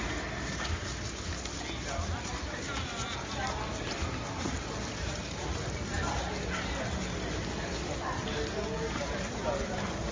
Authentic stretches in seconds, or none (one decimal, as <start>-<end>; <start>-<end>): 0.0-10.1